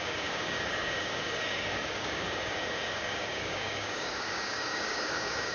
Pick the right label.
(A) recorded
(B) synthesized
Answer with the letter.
B